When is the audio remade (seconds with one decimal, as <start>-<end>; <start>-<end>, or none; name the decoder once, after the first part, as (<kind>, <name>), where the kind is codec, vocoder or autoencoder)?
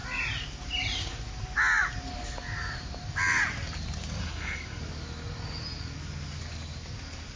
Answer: 4.2-4.8 (codec, SNAC)